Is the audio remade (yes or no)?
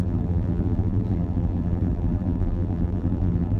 yes